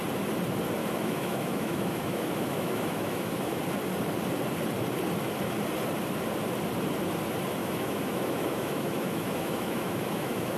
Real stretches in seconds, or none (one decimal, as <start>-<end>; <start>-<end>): 0.0-0.8; 3.6-7.6